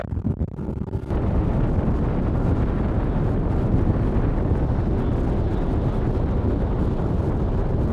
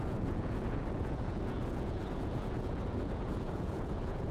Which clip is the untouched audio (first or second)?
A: first